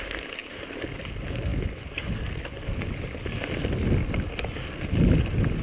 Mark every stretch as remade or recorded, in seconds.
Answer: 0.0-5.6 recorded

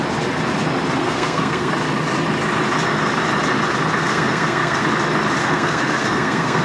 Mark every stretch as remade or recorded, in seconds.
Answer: 0.0-1.0 recorded; 1.0-1.7 remade; 1.7-4.0 recorded; 4.0-4.8 remade; 4.8-5.4 recorded; 5.4-6.6 remade